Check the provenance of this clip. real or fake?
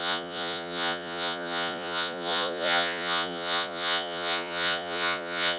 fake